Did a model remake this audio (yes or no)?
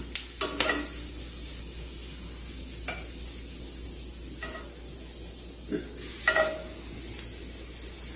no